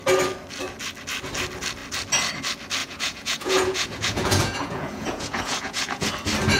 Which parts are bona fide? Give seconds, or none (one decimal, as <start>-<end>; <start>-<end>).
0.0-2.8; 6.1-6.6